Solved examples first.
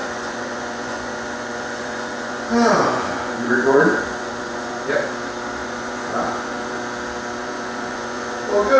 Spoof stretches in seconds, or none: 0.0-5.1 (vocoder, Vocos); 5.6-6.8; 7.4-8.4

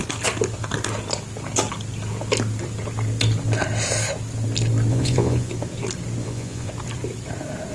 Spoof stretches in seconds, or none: 4.9-5.5 (vocoder, Vocos); 6.2-6.7